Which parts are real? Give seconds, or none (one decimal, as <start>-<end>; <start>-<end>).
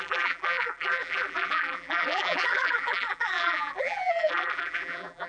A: none